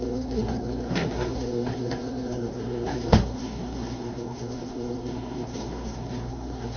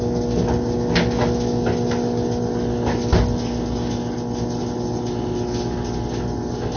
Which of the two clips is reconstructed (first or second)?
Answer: first